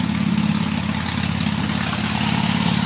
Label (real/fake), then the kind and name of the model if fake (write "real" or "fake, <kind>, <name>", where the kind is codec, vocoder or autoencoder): real